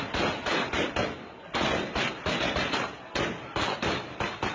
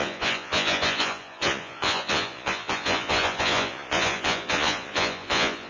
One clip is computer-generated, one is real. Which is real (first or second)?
first